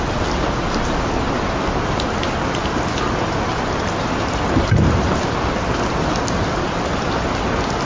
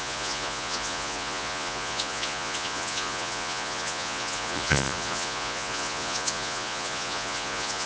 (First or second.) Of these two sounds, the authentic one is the first